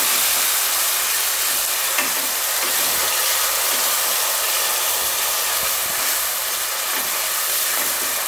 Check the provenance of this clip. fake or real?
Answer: fake